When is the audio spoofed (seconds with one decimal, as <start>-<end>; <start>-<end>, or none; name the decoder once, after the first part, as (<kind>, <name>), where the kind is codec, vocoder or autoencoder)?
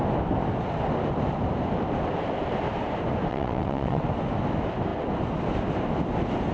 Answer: 3.3-4.0 (vocoder, WaveNeXt)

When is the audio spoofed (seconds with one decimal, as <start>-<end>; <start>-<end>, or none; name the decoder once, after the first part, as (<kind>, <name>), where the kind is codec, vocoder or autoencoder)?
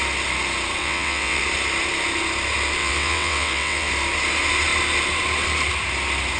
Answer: 0.8-1.4 (vocoder, WaveNeXt); 2.8-3.9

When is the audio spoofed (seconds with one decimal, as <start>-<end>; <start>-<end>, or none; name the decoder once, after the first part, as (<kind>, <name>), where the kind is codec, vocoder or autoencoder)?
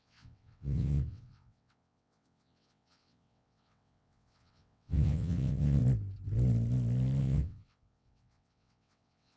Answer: 0.0-5.8 (vocoder, WaveNeXt); 7.2-9.4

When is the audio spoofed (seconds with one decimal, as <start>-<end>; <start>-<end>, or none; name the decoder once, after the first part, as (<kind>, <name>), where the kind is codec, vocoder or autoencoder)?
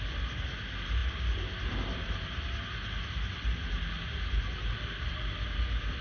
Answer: none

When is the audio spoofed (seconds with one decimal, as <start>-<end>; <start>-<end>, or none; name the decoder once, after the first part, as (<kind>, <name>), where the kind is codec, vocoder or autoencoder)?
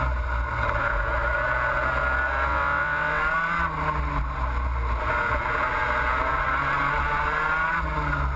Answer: 2.5-3.2 (vocoder, WaveNeXt)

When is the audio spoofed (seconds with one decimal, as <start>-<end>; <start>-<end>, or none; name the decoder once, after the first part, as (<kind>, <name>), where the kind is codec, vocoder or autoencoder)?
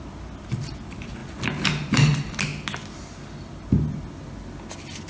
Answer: none